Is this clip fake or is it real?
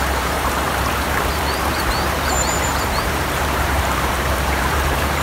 fake